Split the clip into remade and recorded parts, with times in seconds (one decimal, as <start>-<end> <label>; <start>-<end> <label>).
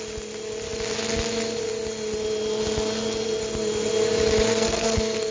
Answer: 0.0-4.5 recorded; 4.5-5.3 remade